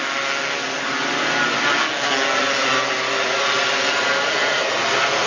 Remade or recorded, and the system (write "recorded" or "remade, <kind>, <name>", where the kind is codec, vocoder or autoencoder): recorded